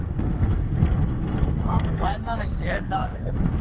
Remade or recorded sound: remade